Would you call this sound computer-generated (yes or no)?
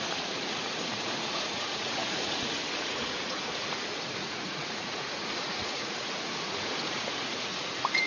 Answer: yes